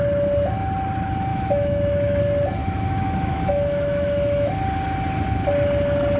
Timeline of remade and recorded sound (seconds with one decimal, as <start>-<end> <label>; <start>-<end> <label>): 0.0-1.3 recorded; 1.3-2.2 remade; 2.2-2.6 recorded; 2.6-4.5 remade; 4.5-6.2 recorded